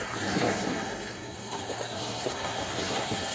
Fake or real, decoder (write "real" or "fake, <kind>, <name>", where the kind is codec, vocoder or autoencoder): fake, codec, SNAC